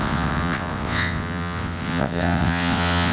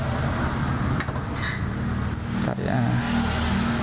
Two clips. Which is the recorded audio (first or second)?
second